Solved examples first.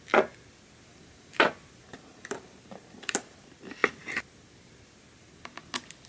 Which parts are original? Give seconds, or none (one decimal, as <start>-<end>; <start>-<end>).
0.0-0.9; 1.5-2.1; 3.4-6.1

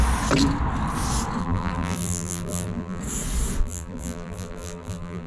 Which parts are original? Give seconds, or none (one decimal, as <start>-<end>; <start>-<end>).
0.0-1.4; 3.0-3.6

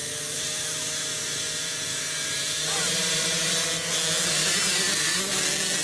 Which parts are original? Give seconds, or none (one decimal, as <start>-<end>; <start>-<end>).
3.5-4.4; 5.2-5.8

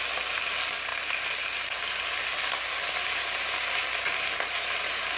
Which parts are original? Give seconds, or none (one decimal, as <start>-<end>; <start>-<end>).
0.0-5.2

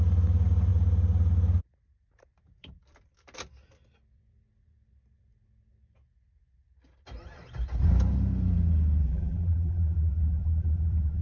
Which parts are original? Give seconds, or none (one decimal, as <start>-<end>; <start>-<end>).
0.0-9.0